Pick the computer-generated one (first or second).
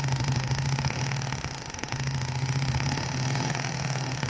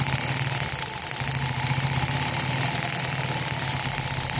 first